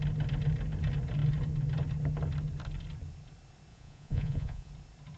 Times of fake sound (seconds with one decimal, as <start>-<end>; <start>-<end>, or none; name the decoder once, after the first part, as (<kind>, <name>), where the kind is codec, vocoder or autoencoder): 3.7-4.7 (vocoder, Vocos)